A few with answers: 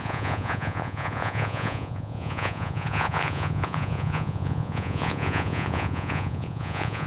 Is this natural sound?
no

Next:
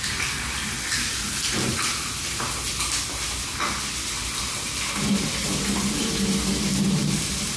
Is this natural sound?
yes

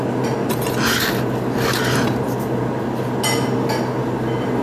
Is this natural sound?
yes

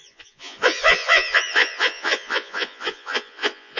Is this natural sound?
no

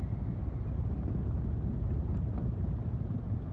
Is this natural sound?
yes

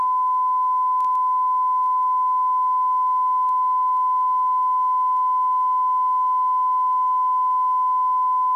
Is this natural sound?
yes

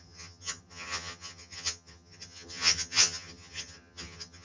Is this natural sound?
no